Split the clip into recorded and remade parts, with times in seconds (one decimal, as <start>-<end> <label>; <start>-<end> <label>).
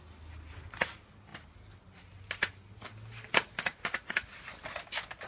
0.0-5.3 recorded